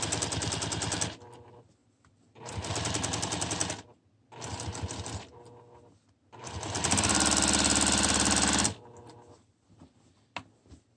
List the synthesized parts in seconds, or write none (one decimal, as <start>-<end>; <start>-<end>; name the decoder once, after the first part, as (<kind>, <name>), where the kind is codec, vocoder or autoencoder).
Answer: none